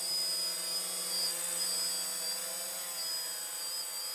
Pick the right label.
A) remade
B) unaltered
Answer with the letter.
B